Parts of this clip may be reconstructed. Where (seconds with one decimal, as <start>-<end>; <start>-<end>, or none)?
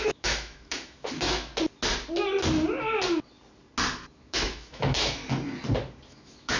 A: 0.0-1.5; 4.1-5.2; 6.1-6.6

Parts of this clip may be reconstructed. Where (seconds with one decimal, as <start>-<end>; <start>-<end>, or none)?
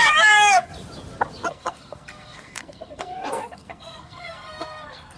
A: 0.0-0.7; 1.5-5.2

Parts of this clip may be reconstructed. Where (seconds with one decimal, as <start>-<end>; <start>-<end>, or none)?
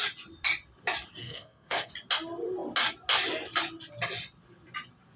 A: 1.2-1.9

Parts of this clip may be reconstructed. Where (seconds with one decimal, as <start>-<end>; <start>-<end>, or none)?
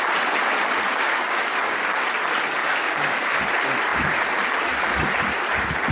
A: 0.9-2.0; 2.6-3.4